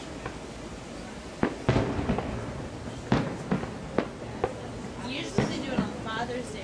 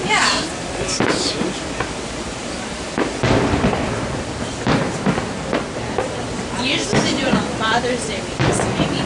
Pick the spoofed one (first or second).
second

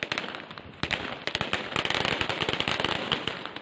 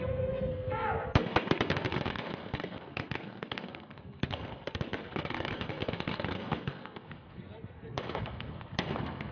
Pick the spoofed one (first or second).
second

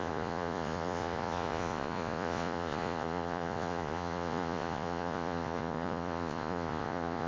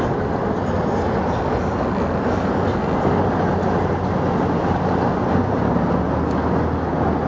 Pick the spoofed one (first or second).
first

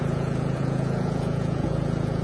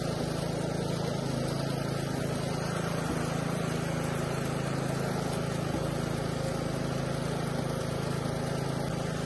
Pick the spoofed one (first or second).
first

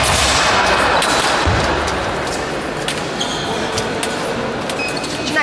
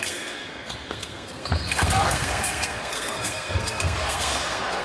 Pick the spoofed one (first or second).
second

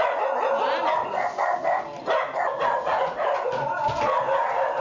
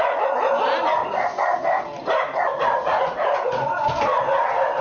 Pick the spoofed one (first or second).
second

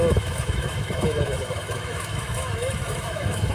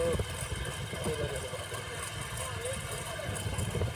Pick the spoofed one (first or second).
first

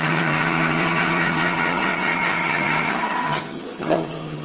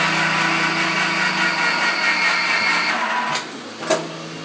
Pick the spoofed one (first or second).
first